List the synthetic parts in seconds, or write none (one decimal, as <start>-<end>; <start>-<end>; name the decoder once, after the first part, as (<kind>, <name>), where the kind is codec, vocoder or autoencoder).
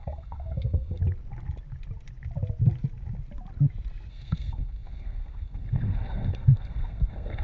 0.0-1.0 (codec, SNAC); 4.1-7.4